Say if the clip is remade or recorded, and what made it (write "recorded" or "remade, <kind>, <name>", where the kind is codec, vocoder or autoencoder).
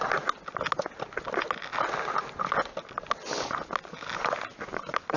recorded